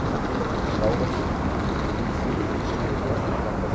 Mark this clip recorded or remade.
recorded